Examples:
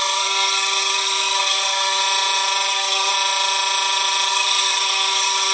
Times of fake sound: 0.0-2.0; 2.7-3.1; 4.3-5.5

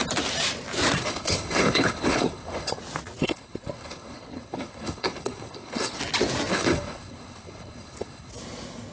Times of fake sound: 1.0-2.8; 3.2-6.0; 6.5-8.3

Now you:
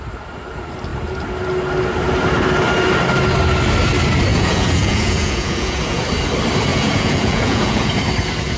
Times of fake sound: 4.3-6.0; 6.7-7.9